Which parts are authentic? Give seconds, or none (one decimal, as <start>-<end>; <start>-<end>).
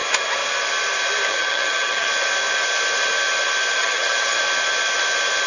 0.0-1.3; 2.1-3.8; 4.4-5.5